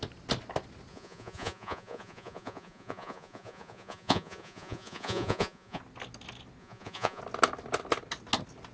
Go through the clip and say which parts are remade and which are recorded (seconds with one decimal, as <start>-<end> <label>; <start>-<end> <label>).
0.0-0.9 recorded; 0.9-5.8 remade; 5.8-6.6 recorded; 6.6-7.2 remade; 7.2-8.7 recorded